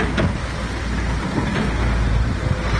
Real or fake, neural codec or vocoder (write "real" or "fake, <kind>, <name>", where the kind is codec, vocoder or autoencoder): real